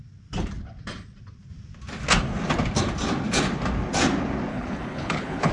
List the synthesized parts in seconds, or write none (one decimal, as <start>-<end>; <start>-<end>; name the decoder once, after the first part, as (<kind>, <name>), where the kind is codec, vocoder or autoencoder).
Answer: 4.5-5.5 (codec, HILCodec)